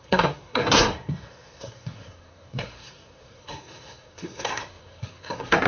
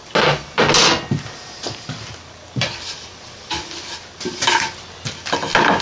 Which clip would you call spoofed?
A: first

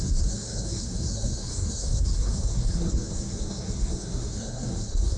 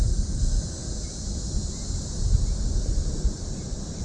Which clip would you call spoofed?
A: first